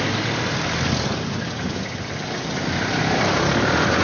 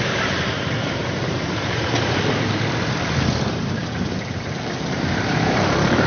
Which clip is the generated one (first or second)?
second